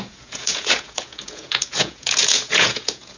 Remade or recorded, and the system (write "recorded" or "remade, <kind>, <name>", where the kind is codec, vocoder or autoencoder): remade, vocoder, Vocos